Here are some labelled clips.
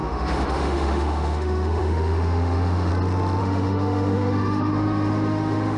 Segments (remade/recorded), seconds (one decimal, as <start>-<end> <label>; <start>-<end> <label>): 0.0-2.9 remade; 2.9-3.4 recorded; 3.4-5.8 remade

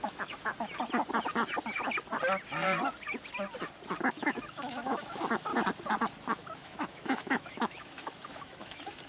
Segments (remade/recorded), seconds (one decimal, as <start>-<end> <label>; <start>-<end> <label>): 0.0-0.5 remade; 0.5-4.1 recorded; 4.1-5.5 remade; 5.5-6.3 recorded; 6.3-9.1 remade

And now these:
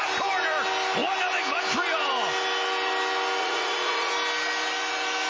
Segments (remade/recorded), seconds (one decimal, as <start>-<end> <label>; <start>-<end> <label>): 0.0-3.4 recorded; 3.4-4.1 remade; 4.1-5.3 recorded

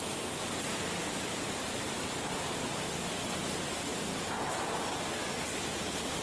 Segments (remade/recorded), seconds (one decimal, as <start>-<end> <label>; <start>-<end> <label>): 0.0-6.2 recorded

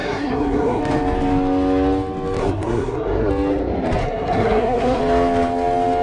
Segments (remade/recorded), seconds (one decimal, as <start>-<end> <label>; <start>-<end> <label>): 0.0-0.8 remade; 0.8-2.4 recorded; 2.4-3.3 remade; 3.3-4.0 recorded; 4.0-5.0 remade; 5.0-6.0 recorded